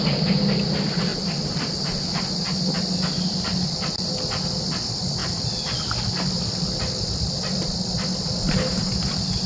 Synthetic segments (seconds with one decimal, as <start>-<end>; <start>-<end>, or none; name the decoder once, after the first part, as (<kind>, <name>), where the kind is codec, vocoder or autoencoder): 1.1-1.8 (vocoder, BigVGAN v2); 3.5-4.6; 5.2-7.9